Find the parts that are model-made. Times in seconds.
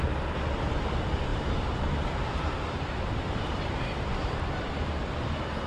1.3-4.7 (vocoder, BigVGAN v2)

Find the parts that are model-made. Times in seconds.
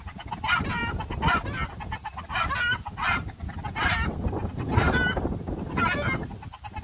none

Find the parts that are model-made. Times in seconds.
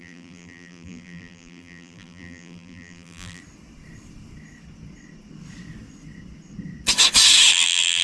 0.0-3.4 (vocoder, BigVGAN v2); 7.5-8.0